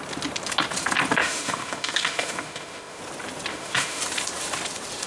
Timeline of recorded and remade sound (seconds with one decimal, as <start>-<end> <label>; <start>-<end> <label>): 0.0-1.2 recorded; 1.2-3.0 remade; 3.0-3.5 recorded; 3.5-4.0 remade; 4.0-5.1 recorded